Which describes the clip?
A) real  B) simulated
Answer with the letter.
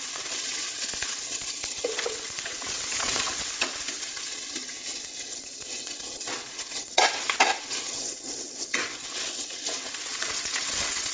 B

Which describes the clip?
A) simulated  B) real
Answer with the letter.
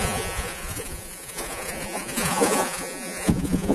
A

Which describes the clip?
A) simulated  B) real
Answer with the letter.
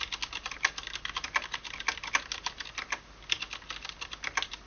B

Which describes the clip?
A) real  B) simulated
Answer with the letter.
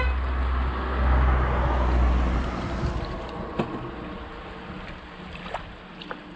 A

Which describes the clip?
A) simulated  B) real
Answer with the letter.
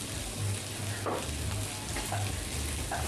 B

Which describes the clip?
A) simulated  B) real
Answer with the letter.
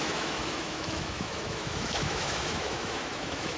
A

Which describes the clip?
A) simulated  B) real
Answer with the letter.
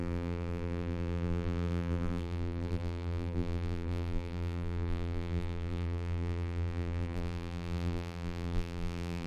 A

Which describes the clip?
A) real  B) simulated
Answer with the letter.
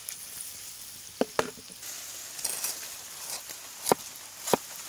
A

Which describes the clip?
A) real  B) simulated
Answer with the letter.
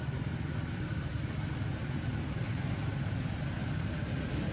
A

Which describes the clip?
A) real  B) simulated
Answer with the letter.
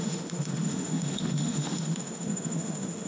B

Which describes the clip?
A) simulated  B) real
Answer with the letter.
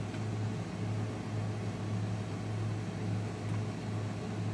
B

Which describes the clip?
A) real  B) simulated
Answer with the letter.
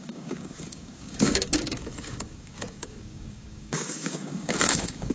B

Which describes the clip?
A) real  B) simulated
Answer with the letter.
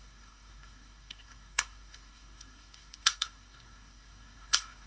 B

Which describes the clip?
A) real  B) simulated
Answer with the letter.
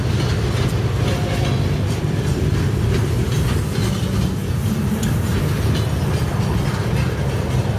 A